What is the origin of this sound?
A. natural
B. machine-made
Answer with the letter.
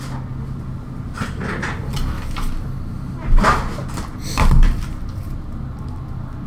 A